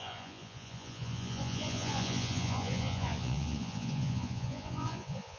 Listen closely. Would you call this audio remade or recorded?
remade